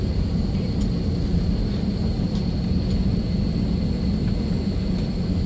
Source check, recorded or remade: recorded